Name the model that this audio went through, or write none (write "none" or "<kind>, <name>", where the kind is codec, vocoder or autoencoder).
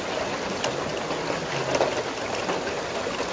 none